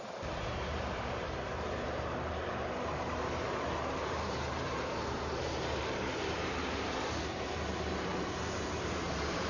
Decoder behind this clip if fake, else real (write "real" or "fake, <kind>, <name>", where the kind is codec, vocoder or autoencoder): fake, vocoder, BigVGAN v2